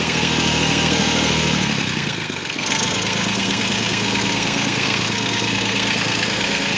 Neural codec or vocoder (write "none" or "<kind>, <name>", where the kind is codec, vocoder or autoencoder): codec, SNAC